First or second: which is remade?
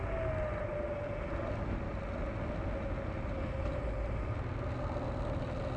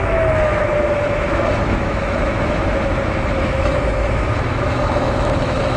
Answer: second